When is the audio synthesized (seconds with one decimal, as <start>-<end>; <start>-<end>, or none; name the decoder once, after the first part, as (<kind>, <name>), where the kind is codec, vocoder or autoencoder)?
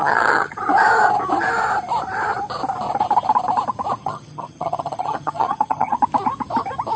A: 0.0-0.6 (vocoder, HiFi-GAN); 4.0-6.0